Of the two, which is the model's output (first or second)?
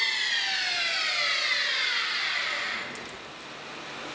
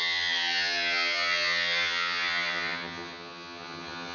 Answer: second